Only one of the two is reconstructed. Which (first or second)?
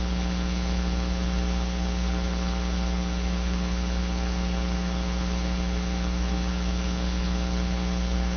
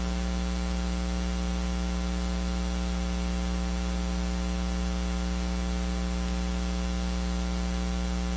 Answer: first